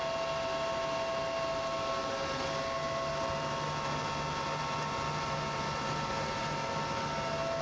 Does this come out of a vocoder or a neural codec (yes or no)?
no